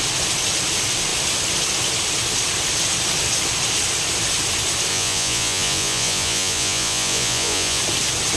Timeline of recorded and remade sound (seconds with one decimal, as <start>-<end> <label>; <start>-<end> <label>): 0.0-4.9 recorded; 4.9-7.8 remade; 7.8-8.4 recorded